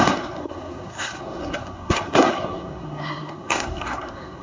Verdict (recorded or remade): remade